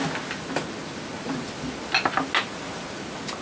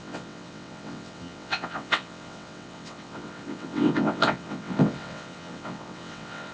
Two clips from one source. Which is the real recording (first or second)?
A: first